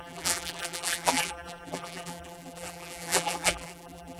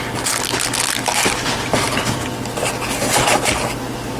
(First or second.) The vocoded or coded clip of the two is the first